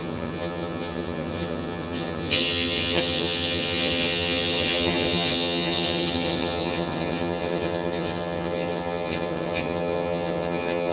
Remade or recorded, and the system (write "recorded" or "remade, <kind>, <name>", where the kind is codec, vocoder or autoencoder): remade, vocoder, HiFi-GAN